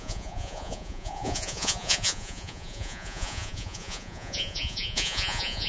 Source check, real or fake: fake